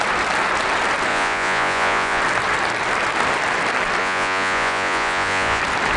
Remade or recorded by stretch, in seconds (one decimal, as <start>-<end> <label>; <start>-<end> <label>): 0.0-1.1 recorded; 1.1-2.2 remade; 2.2-4.0 recorded; 4.0-5.6 remade; 5.6-6.0 recorded